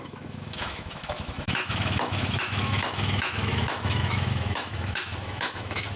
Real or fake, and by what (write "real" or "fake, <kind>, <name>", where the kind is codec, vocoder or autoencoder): fake, autoencoder, DAC-VAE